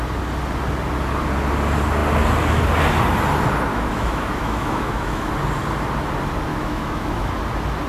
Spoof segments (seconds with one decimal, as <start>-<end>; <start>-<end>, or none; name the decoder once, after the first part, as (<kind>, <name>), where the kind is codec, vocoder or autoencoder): 3.7-5.3 (autoencoder, DAC-VAE); 6.5-7.3